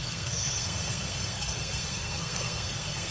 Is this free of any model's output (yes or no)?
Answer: no